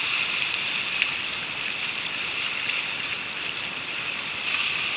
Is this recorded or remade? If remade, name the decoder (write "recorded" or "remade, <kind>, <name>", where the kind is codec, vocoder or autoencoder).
remade, vocoder, BigVGAN v2